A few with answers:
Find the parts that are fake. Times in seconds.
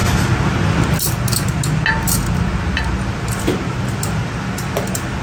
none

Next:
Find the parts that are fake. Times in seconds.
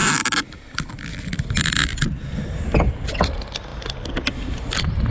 none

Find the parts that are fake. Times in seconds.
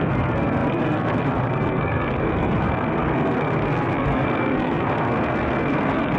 0.0-6.2 (codec, SNAC)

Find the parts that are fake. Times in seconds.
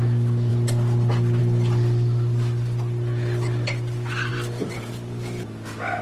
4.3-4.9 (vocoder, BigVGAN v2)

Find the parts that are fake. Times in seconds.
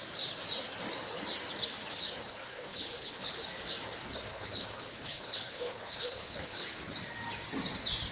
2.2-3.3 (codec, HILCodec); 4.3-6.8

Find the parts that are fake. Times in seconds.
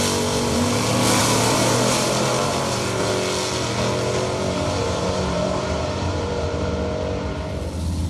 1.2-3.1 (vocoder, BigVGAN v2); 4.8-6.7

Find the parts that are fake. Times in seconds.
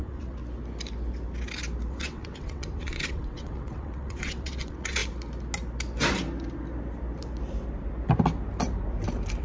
0.0-0.4 (vocoder, WaveNeXt); 1.9-5.0